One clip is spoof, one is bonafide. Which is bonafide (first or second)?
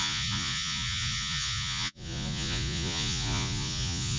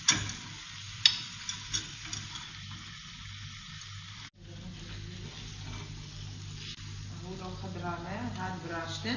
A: second